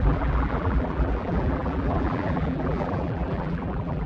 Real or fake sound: fake